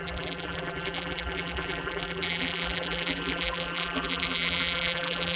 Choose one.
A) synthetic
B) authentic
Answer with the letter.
A